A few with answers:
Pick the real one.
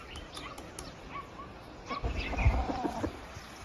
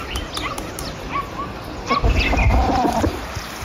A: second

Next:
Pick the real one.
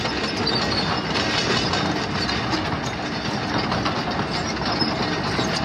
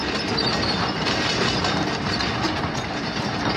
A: first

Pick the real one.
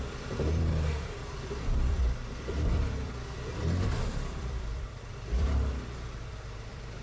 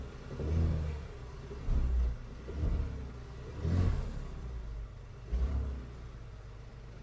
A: second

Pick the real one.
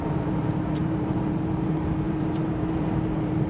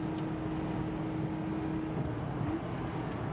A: second